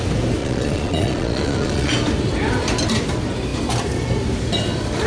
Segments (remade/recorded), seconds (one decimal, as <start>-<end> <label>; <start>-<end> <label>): 0.0-0.4 recorded; 0.4-1.9 remade; 1.9-5.1 recorded